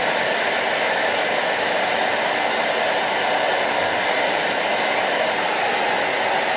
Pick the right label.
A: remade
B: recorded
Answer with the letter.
B